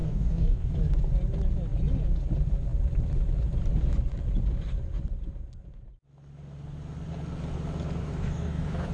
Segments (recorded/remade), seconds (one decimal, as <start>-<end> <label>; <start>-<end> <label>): 0.0-0.7 remade; 0.7-8.0 recorded; 8.0-8.9 remade